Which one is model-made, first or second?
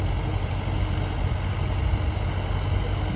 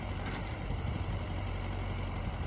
second